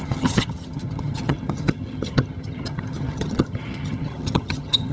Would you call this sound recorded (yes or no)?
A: no